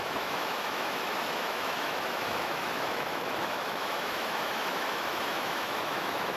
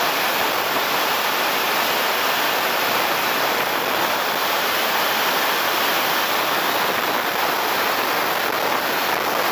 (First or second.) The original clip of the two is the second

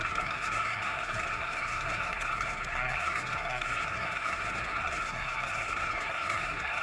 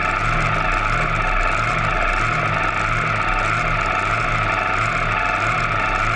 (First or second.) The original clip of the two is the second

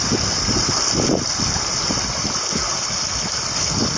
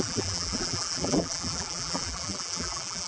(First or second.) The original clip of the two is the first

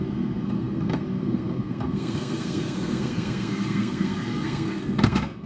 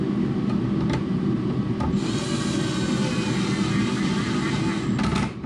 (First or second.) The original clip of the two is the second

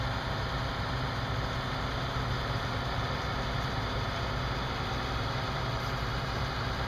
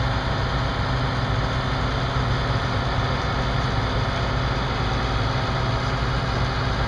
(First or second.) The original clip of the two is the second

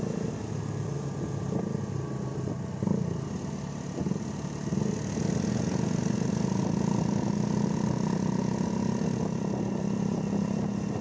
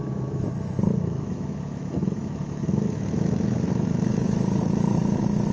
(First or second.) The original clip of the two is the first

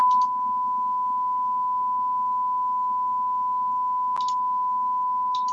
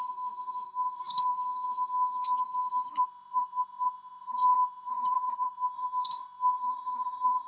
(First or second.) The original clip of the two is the first